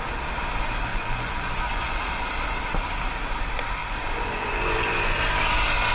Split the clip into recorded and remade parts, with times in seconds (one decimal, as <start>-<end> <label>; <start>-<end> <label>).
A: 0.0-0.9 recorded; 0.9-2.0 remade; 2.0-3.8 recorded; 3.8-5.2 remade; 5.2-5.9 recorded

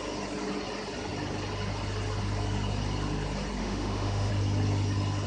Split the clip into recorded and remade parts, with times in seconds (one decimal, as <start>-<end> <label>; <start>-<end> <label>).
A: 0.0-3.6 recorded; 3.6-4.3 remade; 4.3-5.3 recorded

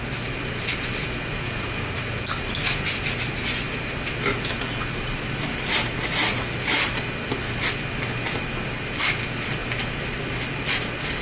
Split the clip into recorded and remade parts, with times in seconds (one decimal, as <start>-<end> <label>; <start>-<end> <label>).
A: 0.0-11.2 recorded

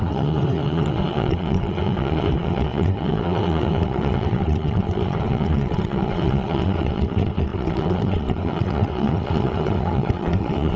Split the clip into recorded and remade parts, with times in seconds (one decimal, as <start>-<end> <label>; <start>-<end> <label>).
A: 0.0-10.8 remade